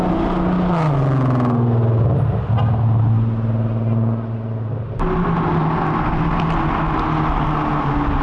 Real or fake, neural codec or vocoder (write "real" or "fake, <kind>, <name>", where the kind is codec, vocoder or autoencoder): real